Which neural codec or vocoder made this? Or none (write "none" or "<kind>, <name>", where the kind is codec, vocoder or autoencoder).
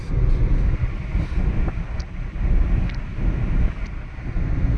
none